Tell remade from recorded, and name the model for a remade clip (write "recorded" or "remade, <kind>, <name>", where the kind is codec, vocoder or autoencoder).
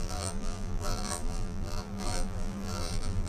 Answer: remade, vocoder, BigVGAN v2